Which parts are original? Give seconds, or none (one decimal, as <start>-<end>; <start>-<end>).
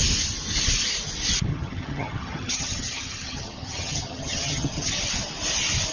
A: 0.0-1.5; 5.0-5.9